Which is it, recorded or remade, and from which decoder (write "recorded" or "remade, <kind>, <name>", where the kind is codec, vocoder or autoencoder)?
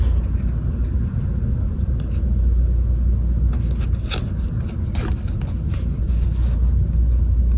recorded